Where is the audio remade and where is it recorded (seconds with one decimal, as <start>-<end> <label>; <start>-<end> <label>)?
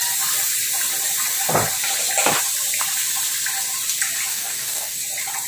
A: 0.0-4.3 recorded; 4.3-5.0 remade; 5.0-5.5 recorded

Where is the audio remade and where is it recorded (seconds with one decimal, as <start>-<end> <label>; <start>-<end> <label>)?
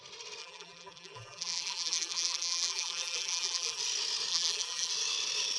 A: 0.0-0.4 recorded; 0.4-3.8 remade; 3.8-4.3 recorded; 4.3-4.9 remade; 4.9-5.6 recorded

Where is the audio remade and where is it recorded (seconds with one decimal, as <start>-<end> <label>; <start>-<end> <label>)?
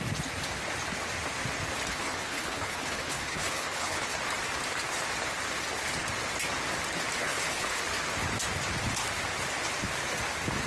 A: 0.0-1.9 recorded; 1.9-4.2 remade; 4.2-7.2 recorded; 7.2-7.8 remade; 7.8-10.7 recorded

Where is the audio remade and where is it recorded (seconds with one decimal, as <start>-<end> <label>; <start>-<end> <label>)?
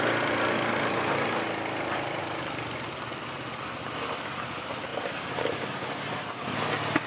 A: 0.0-2.2 recorded; 2.2-2.9 remade; 2.9-7.1 recorded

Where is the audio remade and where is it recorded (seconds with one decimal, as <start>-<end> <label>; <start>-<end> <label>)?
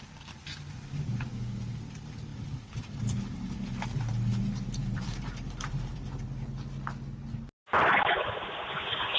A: 0.0-2.3 recorded; 2.3-3.7 remade; 3.7-4.3 recorded; 4.3-6.2 remade; 6.2-9.2 recorded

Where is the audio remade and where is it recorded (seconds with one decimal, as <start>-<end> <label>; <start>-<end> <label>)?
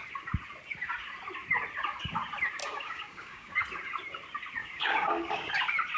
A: 0.0-2.6 recorded; 2.6-3.5 remade; 3.5-4.6 recorded; 4.6-5.5 remade; 5.5-6.0 recorded